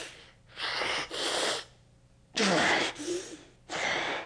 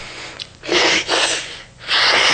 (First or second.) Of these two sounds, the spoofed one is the second